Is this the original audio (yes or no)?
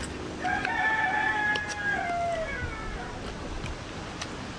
yes